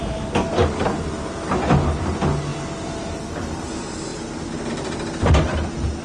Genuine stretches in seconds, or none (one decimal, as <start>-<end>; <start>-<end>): 0.0-6.0